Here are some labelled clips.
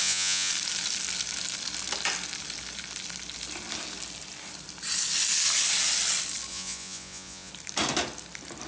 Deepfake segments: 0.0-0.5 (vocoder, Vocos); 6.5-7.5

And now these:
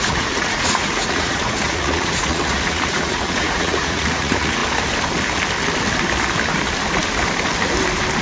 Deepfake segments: 0.0-4.6 (vocoder, Vocos)

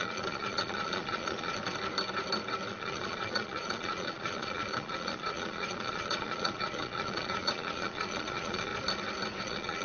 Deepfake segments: 0.0-1.6 (vocoder, Vocos); 2.7-8.7; 9.4-9.8

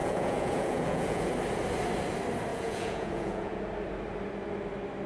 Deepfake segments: 0.0-1.3 (vocoder, Vocos); 2.5-3.6